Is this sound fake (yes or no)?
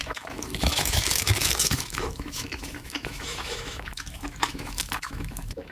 yes